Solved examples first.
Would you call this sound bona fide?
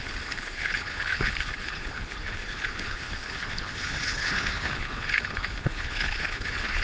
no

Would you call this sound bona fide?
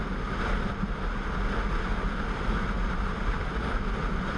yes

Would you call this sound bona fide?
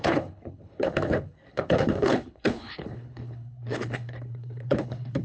no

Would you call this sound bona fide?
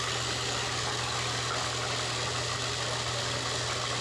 yes